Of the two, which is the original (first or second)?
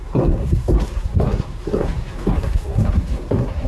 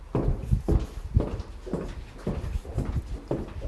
second